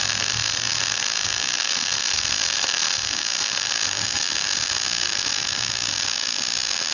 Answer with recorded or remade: recorded